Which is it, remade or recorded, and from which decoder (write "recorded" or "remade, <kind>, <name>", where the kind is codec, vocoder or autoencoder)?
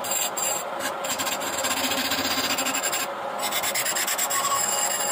recorded